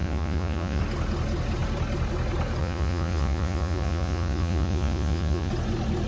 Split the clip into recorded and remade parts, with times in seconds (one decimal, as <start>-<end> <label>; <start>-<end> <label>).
0.0-0.8 remade; 0.8-2.6 recorded; 2.6-5.5 remade; 5.5-6.1 recorded